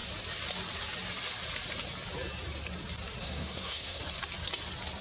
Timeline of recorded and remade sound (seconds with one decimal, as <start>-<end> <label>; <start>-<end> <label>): 0.0-3.2 recorded; 3.2-4.0 remade; 4.0-5.0 recorded